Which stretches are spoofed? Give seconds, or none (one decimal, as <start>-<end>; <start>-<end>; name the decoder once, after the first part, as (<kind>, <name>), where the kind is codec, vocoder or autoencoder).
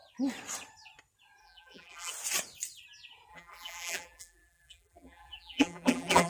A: 1.4-2.1 (vocoder, BigVGAN v2); 3.3-6.3